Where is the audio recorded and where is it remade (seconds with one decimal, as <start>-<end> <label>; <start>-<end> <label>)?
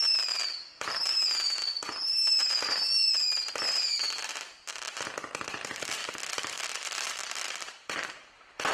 0.0-1.6 remade; 1.6-4.8 recorded; 4.8-8.7 remade